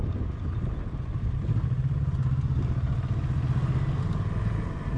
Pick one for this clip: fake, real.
real